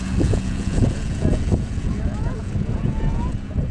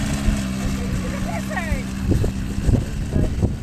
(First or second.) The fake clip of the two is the first